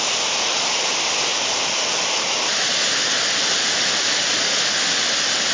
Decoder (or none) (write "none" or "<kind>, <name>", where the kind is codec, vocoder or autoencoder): none